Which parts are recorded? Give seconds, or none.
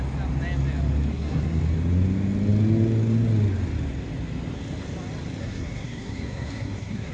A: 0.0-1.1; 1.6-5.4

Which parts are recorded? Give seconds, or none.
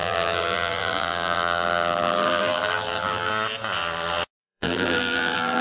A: 3.3-4.4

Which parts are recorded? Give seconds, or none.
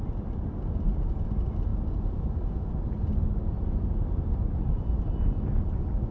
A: 0.0-6.1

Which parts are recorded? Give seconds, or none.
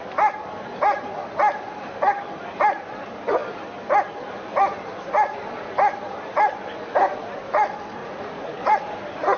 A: 0.0-8.0; 8.8-9.4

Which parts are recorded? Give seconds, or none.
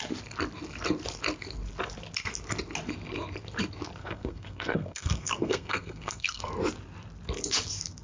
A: 0.0-4.0; 6.5-8.0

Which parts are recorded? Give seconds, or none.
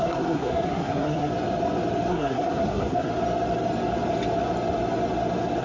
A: 1.3-2.1; 3.1-5.6